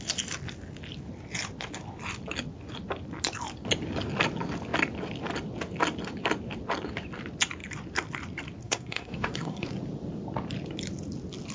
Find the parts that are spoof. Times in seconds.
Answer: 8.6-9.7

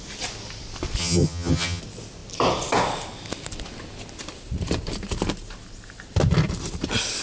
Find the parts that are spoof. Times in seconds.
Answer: 1.0-1.8

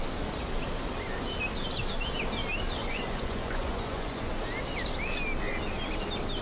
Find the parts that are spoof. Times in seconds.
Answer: 2.8-4.3

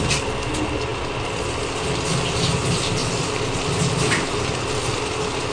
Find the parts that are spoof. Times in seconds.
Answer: none

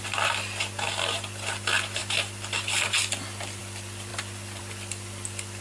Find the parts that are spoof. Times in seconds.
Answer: none

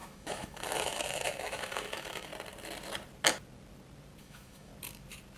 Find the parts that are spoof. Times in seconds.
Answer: 0.0-2.3; 4.2-4.7

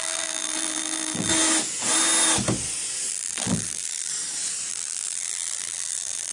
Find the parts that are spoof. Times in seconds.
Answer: 0.0-1.3; 3.1-4.1; 4.7-6.3

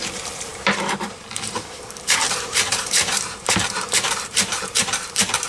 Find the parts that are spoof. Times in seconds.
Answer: 0.0-5.5